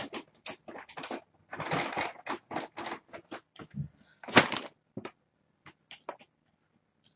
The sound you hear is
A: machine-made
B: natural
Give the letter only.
B